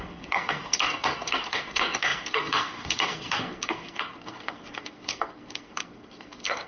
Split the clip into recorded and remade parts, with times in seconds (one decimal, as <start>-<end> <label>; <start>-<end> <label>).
0.0-6.7 remade

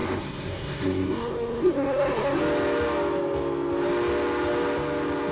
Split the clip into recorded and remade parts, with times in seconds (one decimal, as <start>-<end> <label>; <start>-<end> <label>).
0.0-2.4 remade; 2.4-5.3 recorded